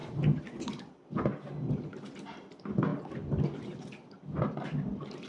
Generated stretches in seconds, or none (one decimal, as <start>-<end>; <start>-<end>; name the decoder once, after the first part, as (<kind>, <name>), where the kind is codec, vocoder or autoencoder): none